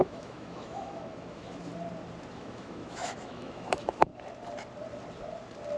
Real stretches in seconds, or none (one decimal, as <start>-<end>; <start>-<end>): 1.7-2.3; 4.1-5.8